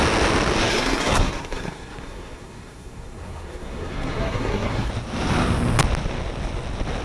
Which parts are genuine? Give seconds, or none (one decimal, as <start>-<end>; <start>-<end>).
0.0-0.7; 4.9-7.0